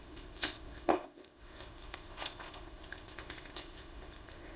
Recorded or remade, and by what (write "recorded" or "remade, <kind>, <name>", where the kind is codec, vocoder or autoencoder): remade, codec, ZipCodec